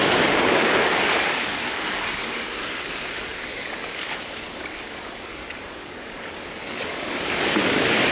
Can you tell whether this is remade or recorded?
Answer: remade